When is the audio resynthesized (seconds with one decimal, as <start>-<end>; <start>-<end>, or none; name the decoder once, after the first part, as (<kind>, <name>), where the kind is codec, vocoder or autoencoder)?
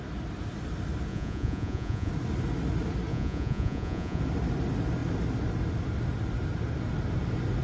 1.1-2.1 (vocoder, Vocos); 3.1-4.2